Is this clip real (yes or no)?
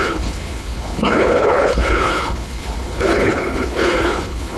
no